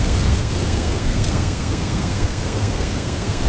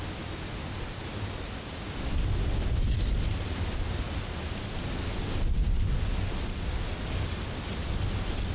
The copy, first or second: first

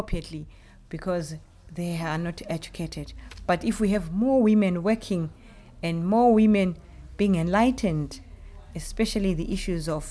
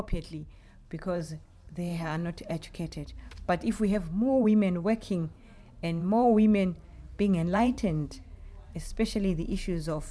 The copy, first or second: second